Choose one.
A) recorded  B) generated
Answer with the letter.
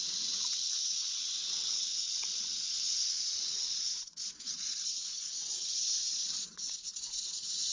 B